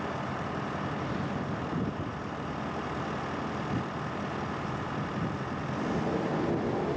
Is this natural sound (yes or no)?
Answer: yes